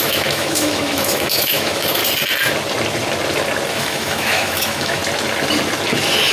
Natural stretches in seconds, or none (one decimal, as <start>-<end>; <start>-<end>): 2.0-3.7; 5.0-6.3